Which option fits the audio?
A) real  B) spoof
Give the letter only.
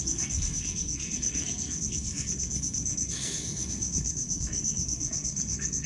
B